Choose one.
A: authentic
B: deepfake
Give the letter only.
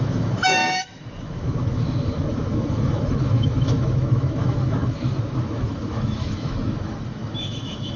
B